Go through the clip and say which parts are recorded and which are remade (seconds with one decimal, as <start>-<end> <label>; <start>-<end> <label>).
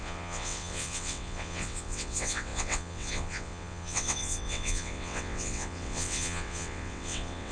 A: 0.0-7.5 remade